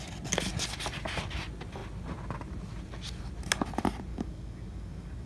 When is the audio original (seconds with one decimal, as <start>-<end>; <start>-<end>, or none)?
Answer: 0.0-4.1

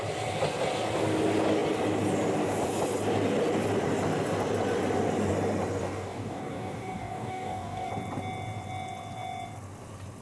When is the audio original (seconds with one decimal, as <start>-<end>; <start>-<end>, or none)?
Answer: 0.0-5.8; 7.9-10.2